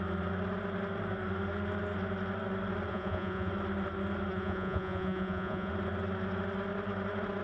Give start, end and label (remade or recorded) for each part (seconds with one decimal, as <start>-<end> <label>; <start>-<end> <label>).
0.0-2.9 recorded; 2.9-3.5 remade; 3.5-4.3 recorded; 4.3-5.7 remade; 5.7-7.4 recorded